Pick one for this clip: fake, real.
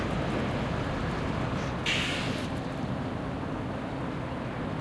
real